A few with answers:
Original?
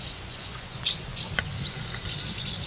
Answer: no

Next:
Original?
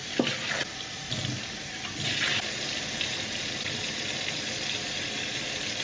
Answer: yes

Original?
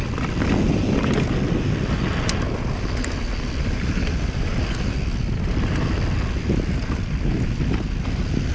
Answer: yes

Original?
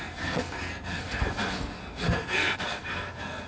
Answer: no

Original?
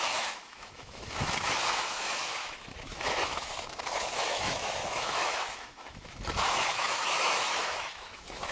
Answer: no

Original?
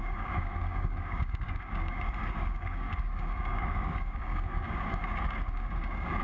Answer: no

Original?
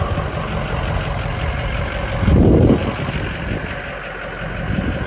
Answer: yes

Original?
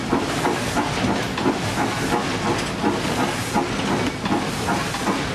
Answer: yes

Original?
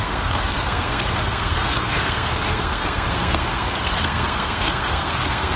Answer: no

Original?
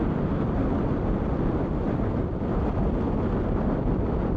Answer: no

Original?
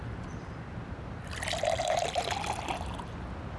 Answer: yes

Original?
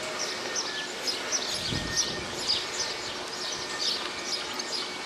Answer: yes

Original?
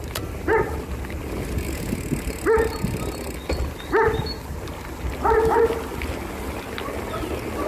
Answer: yes